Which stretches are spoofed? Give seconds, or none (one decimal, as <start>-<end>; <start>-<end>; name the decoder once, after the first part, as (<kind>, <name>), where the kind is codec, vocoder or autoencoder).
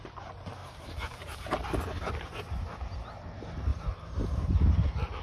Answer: 0.6-2.1 (vocoder, BigVGAN v2); 3.7-4.5